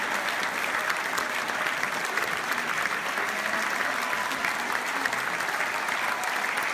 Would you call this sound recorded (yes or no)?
yes